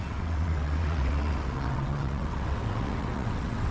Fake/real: fake